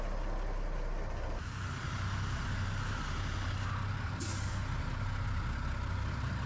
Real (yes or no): yes